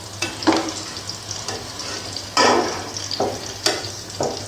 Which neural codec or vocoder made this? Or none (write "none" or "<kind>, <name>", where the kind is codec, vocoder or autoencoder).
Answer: none